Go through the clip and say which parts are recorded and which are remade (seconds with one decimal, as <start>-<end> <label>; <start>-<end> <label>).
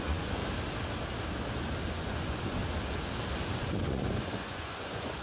0.0-0.4 remade; 0.4-1.9 recorded; 1.9-2.6 remade; 2.6-3.5 recorded; 3.5-5.2 remade